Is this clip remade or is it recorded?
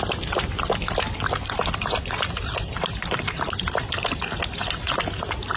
remade